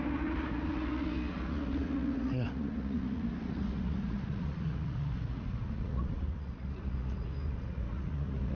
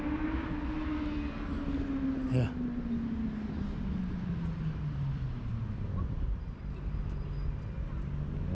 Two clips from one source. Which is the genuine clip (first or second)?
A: second